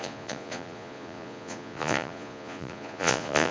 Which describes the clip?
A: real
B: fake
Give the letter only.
B